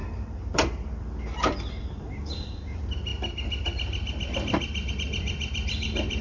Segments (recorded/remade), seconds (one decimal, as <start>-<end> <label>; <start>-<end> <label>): 0.0-3.1 remade; 3.1-4.9 recorded; 4.9-6.2 remade